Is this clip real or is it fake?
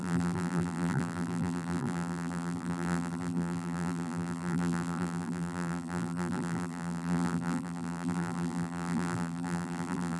fake